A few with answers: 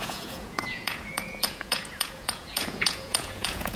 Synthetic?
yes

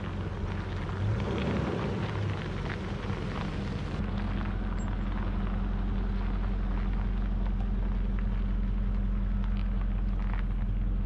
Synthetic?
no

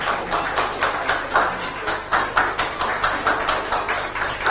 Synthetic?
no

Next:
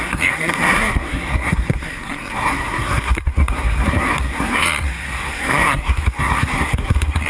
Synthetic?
yes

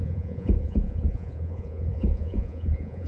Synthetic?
yes